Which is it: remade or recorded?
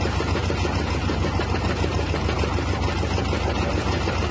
recorded